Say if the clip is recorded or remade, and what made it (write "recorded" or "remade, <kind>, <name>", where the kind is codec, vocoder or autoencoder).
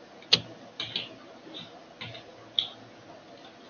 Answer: recorded